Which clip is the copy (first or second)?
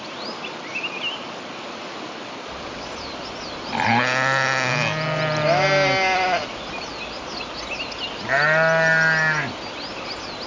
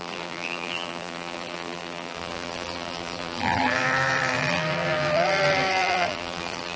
second